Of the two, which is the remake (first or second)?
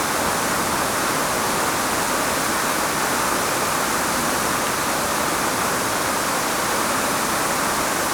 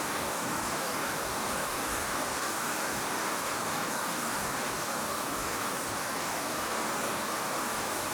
second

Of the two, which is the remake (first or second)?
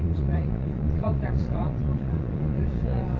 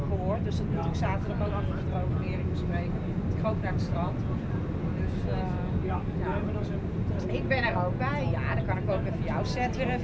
first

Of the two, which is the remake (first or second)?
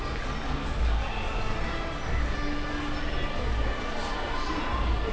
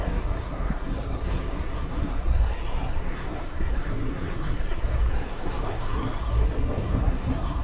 second